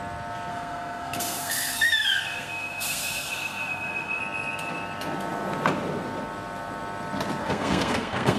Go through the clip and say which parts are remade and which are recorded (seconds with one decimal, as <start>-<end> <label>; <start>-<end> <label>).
0.0-0.5 recorded; 0.5-4.2 remade; 4.2-7.4 recorded; 7.4-8.4 remade